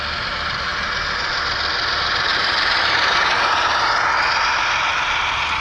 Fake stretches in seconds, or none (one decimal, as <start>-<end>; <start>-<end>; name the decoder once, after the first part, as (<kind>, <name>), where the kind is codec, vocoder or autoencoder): 0.7-1.3 (vocoder, BigVGAN v2); 2.3-3.9